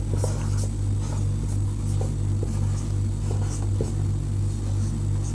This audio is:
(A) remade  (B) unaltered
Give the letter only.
B